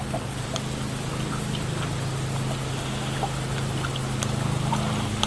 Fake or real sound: real